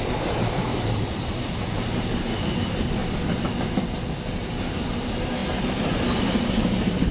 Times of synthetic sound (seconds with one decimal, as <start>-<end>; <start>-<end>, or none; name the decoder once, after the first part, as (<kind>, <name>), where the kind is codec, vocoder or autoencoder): 0.7-1.4 (vocoder, BigVGAN v2)